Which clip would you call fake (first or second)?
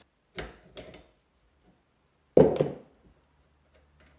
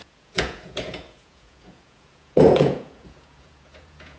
second